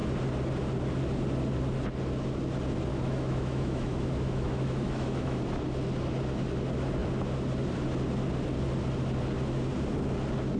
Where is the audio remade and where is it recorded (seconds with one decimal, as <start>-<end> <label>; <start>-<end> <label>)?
0.0-2.9 recorded; 2.9-5.4 remade; 5.4-10.6 recorded